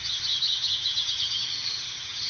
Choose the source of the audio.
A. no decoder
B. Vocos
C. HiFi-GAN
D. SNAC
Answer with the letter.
C